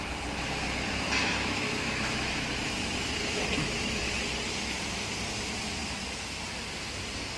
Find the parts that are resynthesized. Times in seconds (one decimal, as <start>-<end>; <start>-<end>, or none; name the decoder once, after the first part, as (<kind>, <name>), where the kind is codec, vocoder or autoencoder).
1.2-4.0 (autoencoder, DAC-VAE)